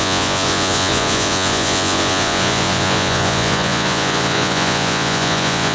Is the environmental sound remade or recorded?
remade